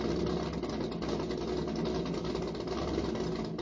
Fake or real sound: real